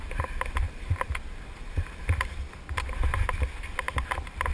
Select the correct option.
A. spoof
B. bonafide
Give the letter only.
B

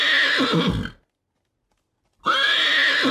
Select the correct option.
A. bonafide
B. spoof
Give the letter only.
A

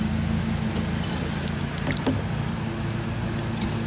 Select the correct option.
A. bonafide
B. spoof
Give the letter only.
A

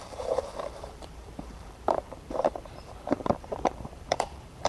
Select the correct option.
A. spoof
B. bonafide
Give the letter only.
A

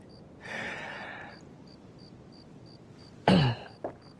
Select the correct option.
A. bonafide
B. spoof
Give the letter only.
A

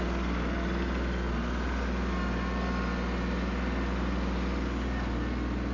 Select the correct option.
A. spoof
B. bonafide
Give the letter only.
B